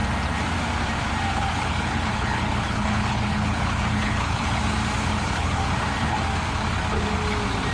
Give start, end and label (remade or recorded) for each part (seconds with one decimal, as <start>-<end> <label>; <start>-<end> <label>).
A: 0.0-1.3 recorded; 1.3-4.6 remade; 4.6-5.1 recorded; 5.1-5.6 remade; 5.6-7.7 recorded